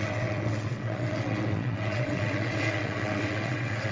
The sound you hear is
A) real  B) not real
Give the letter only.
B